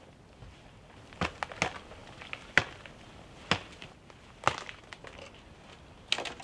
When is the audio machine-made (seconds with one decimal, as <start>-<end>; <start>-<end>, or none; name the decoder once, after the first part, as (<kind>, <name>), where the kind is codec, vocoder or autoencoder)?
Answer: none